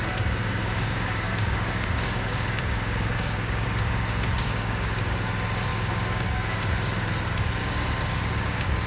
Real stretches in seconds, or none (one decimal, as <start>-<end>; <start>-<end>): 0.0-0.4; 5.1-5.7; 6.6-7.6

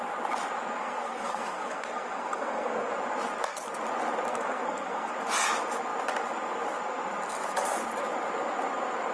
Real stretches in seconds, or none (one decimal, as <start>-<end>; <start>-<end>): 0.0-0.8; 2.9-4.3; 5.1-9.1

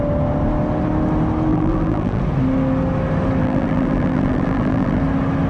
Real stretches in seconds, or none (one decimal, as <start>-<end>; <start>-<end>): 0.0-1.5; 2.2-3.4; 5.0-5.5

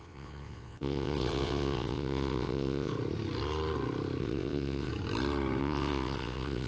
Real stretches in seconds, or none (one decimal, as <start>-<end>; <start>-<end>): 2.9-4.2; 4.9-5.6

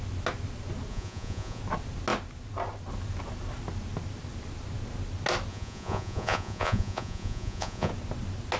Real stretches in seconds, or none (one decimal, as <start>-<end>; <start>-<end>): 0.0-0.9; 1.6-5.5; 7.9-8.6

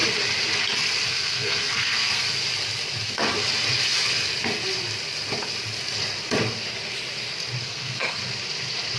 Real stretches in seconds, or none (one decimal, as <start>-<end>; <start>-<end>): 0.0-1.1; 2.4-7.6; 8.2-9.0

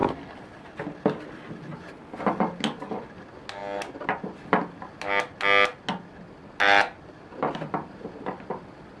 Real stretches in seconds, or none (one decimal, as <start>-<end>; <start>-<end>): 0.0-9.0